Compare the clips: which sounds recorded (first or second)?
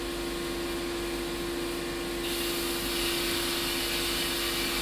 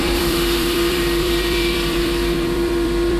first